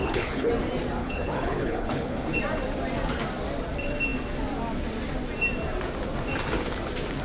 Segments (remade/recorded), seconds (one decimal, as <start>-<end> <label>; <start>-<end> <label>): 0.0-0.5 remade; 0.5-1.0 recorded; 1.0-2.4 remade; 2.4-7.2 recorded